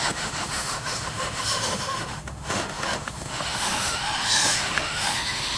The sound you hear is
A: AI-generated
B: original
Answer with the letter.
A